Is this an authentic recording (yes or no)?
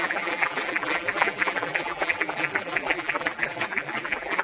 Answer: no